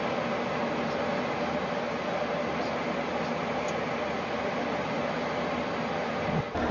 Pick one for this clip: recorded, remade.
recorded